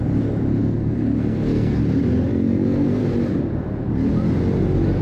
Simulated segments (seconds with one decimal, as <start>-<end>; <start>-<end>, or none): 0.6-1.8; 2.3-3.1